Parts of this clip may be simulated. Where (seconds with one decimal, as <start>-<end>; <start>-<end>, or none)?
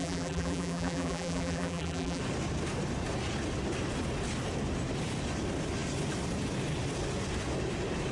0.0-2.2